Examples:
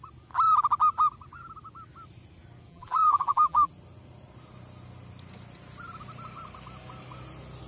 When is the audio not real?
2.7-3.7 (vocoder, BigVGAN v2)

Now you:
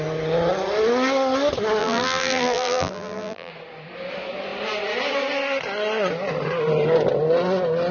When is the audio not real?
1.8-3.5 (vocoder, BigVGAN v2)

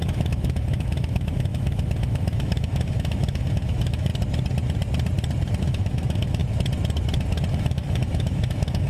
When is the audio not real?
0.0-4.1 (autoencoder, DAC-VAE); 5.6-6.4; 7.5-8.9